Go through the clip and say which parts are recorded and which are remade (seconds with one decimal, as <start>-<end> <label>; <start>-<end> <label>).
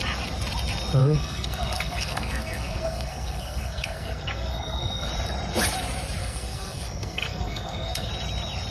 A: 0.0-1.0 recorded; 1.0-5.1 remade; 5.1-6.2 recorded; 6.2-8.1 remade; 8.1-8.7 recorded